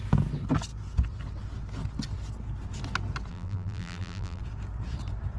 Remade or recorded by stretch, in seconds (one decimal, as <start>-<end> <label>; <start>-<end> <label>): 0.0-3.3 recorded; 3.3-4.4 remade; 4.4-5.4 recorded